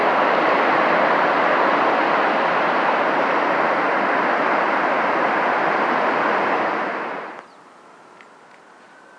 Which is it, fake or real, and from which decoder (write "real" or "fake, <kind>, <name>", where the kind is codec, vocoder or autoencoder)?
real